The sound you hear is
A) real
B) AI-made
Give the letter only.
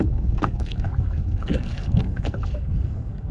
B